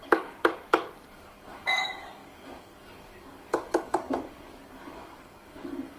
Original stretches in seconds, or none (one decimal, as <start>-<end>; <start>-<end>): none